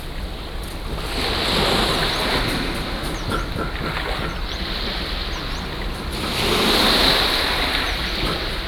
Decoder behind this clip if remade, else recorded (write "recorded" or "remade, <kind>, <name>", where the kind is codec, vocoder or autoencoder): recorded